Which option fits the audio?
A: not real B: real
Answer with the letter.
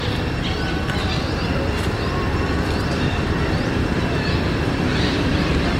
A